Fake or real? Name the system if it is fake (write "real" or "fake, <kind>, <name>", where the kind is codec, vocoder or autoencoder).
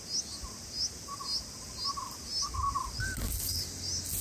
real